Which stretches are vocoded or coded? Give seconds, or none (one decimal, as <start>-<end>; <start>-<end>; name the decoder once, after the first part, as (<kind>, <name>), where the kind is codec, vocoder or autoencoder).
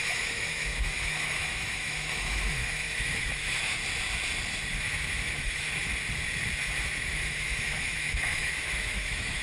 0.0-3.8 (autoencoder, DAC-VAE); 4.7-5.9; 6.6-9.4